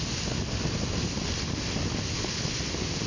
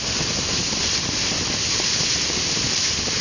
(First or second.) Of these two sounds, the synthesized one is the second